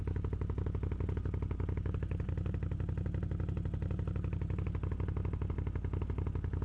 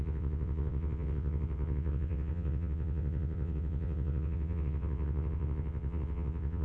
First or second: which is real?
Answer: first